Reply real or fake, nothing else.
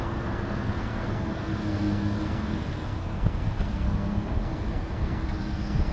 fake